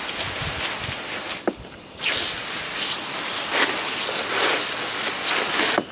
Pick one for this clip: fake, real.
real